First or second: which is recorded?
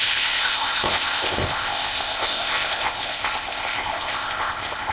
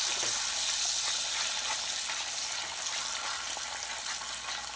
second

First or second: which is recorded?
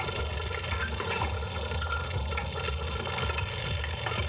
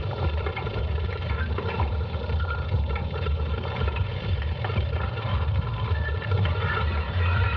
first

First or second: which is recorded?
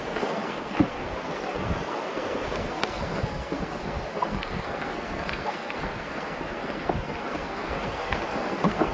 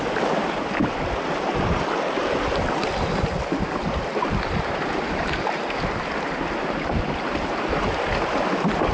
second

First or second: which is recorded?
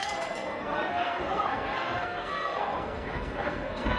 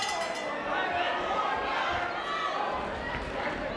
second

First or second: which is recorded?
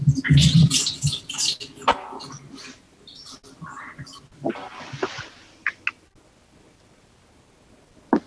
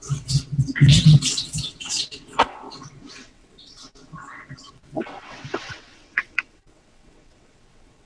first